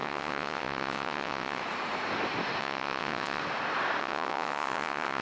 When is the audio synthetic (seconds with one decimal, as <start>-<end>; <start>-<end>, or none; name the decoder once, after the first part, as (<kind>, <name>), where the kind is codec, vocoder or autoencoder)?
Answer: 0.0-1.6 (vocoder, WaveNeXt); 2.6-3.4; 4.0-5.2